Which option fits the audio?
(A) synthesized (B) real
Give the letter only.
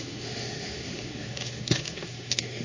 A